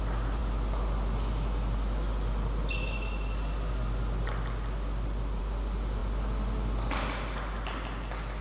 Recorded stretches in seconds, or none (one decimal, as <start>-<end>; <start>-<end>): 0.0-8.4